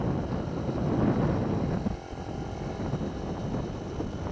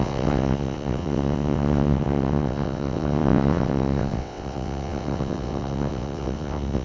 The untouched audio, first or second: first